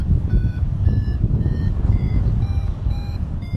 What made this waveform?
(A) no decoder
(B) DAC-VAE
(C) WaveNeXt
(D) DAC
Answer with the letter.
D